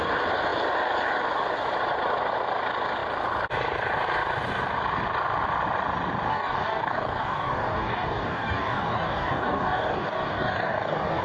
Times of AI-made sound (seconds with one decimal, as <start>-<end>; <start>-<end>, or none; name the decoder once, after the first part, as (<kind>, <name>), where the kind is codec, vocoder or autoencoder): 6.3-11.2 (codec, DAC)